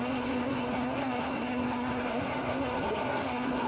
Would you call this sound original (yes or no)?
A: no